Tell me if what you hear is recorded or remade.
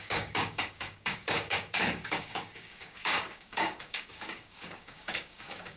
remade